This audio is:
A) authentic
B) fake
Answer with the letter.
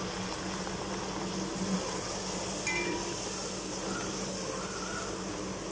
A